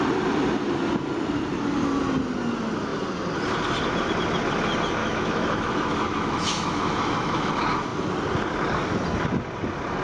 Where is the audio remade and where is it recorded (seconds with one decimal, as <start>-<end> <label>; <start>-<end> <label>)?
0.0-5.0 recorded; 5.0-7.5 remade; 7.5-10.0 recorded